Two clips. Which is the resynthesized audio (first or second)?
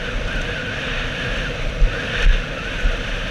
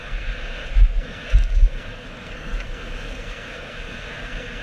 second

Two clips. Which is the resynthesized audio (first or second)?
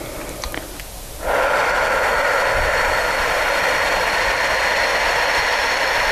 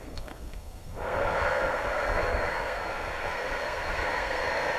second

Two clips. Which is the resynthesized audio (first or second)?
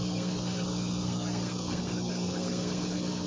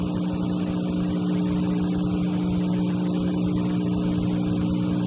first